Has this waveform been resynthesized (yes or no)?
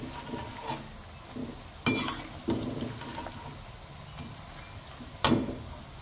no